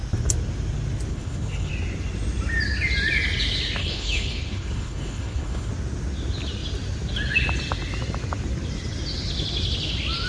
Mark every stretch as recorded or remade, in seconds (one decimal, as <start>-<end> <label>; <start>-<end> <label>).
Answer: 0.0-1.1 recorded; 1.1-1.7 remade; 1.7-3.8 recorded; 3.8-5.7 remade; 5.7-10.3 recorded